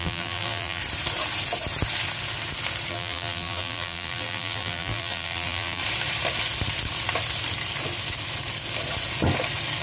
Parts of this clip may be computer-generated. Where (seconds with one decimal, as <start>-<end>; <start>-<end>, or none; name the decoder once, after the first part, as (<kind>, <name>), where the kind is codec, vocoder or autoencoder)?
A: 0.0-0.8 (vocoder, BigVGAN v2); 2.9-5.8